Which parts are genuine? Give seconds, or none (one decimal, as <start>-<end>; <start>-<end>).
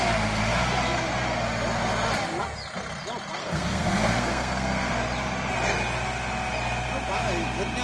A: 0.0-3.4; 4.9-7.8